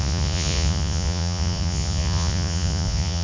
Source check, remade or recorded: remade